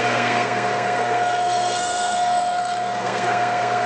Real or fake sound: fake